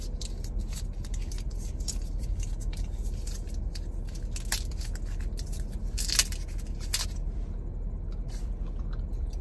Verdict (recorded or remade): recorded